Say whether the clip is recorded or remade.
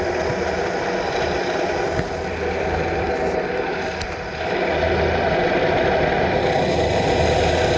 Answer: recorded